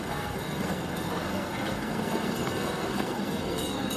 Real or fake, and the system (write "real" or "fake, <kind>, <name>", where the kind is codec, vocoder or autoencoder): fake, codec, SNAC